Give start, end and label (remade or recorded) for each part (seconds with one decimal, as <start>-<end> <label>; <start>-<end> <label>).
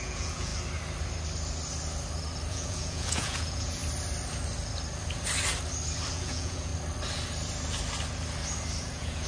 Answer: 0.0-0.5 remade; 0.5-2.5 recorded; 2.5-3.8 remade; 3.8-6.1 recorded; 6.1-6.7 remade; 6.7-8.8 recorded; 8.8-9.3 remade